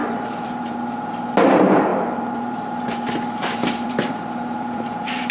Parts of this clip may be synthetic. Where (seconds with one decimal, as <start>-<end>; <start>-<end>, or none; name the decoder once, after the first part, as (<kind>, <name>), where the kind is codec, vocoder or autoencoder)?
0.0-0.8 (vocoder, BigVGAN v2); 1.9-5.3